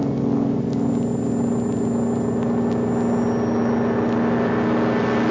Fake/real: real